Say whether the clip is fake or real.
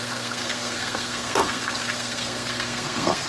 fake